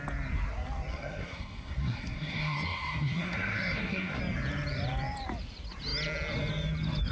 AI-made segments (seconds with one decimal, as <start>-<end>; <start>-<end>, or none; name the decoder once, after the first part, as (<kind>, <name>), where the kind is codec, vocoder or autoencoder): 0.9-4.2 (codec, SNAC)